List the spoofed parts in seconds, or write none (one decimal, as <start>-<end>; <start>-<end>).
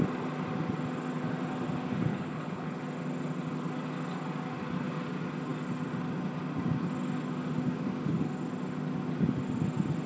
2.1-2.8